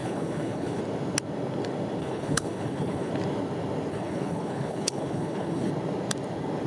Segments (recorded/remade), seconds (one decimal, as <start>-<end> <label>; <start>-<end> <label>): 0.0-0.8 remade; 0.8-2.0 recorded; 2.0-3.1 remade; 3.1-3.9 recorded; 3.9-5.7 remade; 5.7-6.7 recorded